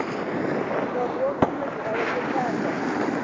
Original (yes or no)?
yes